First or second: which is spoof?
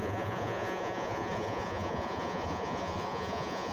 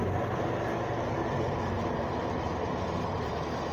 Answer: first